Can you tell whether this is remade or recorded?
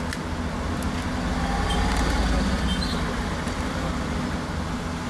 recorded